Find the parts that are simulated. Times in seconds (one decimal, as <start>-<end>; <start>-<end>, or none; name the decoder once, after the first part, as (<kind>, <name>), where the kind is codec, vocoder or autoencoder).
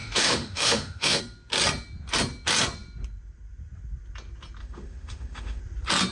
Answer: 0.0-1.2 (autoencoder, DAC-VAE); 4.6-5.6